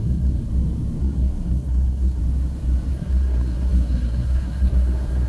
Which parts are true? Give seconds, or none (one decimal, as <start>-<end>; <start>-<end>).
0.5-1.0; 2.2-2.9